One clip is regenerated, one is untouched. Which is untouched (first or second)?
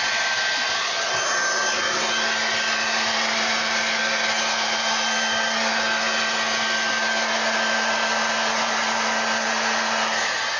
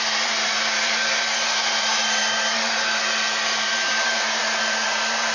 first